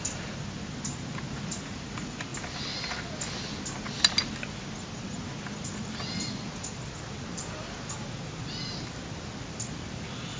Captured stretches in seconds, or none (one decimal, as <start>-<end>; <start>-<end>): 0.0-6.5; 7.7-10.4